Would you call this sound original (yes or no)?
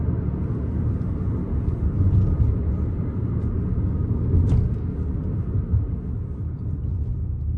yes